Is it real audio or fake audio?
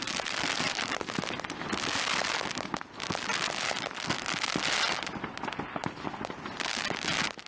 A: fake